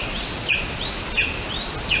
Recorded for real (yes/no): yes